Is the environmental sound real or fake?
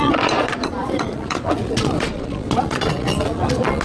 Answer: fake